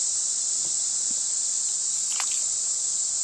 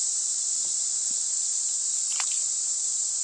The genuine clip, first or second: first